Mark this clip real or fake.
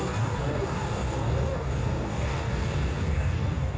fake